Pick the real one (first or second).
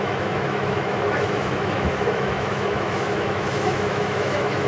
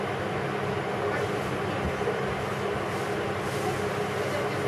second